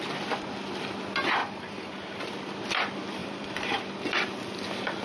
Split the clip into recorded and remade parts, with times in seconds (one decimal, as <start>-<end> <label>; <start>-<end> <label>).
0.0-1.4 recorded; 1.4-2.3 remade; 2.3-3.2 recorded; 3.2-3.9 remade; 3.9-5.0 recorded